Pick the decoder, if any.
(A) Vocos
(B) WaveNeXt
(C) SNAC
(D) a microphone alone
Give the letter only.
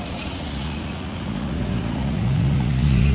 A